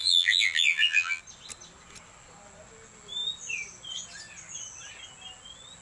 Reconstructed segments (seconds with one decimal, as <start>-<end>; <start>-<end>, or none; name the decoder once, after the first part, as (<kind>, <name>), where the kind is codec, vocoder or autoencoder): 0.0-1.2 (vocoder, BigVGAN v2)